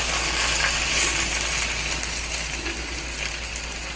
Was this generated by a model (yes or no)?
no